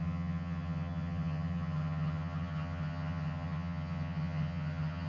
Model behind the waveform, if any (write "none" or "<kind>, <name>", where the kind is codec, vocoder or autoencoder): vocoder, HiFi-GAN